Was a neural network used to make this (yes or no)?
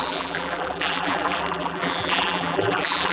yes